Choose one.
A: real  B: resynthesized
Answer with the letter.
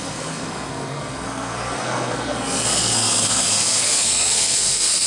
B